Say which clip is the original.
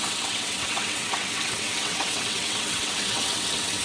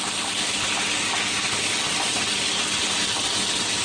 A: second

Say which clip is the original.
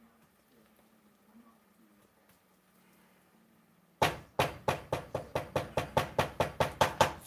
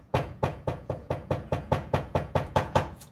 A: first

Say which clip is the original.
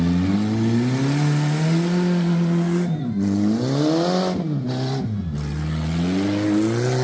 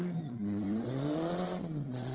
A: first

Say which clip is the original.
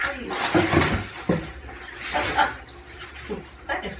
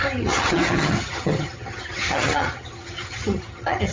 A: first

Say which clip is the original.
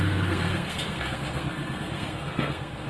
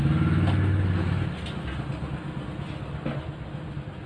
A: second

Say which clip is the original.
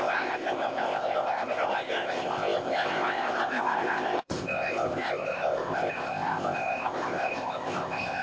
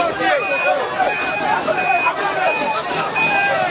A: second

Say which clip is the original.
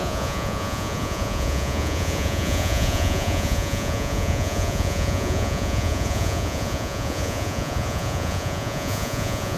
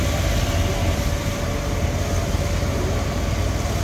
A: second